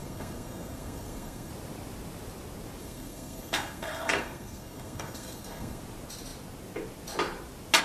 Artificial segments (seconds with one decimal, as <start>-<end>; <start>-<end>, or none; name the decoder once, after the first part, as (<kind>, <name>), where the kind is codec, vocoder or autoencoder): 0.0-1.5 (codec, SNAC); 2.8-5.8